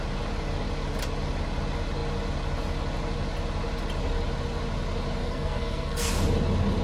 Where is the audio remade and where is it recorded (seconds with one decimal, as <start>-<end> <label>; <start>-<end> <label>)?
0.0-5.2 recorded; 5.2-6.1 remade; 6.1-6.8 recorded